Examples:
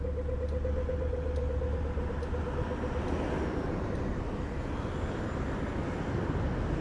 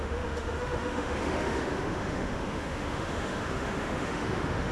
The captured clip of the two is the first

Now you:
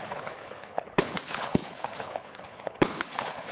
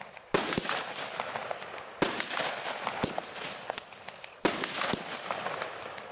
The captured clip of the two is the second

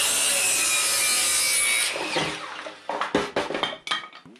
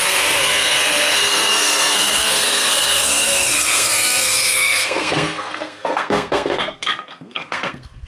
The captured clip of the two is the first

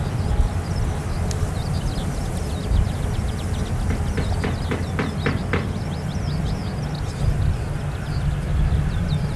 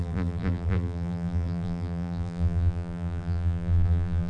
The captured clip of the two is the first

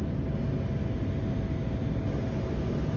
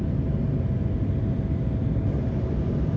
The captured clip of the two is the first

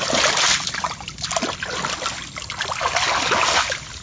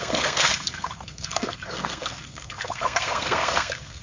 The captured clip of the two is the first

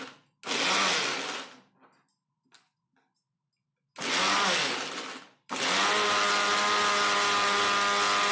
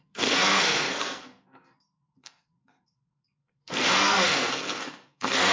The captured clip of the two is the first